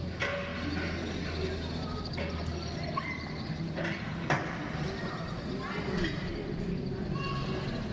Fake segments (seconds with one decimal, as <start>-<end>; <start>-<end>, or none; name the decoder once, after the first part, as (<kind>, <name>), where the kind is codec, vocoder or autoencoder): none